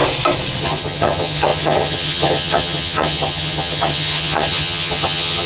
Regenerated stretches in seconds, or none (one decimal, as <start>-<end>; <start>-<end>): 0.6-5.5